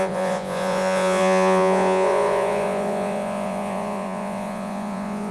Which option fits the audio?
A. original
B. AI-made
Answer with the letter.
B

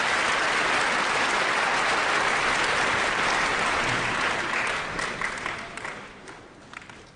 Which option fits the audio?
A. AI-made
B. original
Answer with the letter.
B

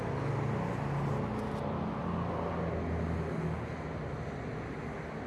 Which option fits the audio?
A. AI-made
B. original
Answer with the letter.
B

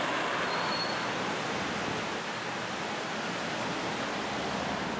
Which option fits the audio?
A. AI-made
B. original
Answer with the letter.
B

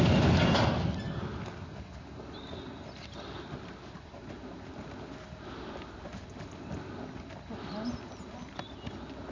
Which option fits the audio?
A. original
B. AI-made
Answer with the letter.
A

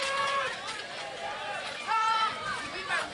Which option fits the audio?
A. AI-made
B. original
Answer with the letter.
A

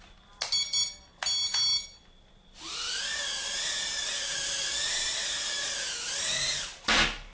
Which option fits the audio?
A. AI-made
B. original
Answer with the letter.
B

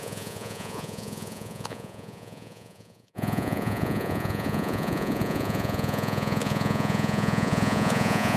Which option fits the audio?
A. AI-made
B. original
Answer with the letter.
A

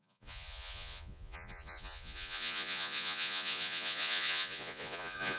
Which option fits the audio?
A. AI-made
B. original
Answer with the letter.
A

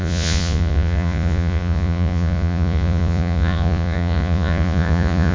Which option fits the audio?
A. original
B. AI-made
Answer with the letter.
B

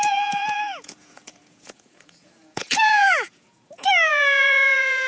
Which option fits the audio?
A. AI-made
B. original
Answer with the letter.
A